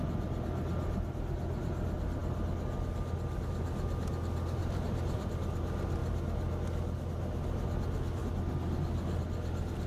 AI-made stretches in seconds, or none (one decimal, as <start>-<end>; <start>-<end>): 4.6-5.3